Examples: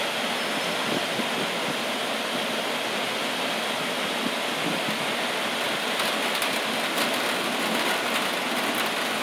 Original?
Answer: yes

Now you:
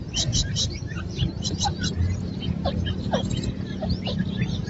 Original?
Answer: no